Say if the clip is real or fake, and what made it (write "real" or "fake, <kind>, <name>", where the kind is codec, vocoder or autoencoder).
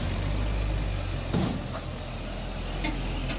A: real